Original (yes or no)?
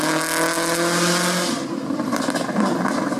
yes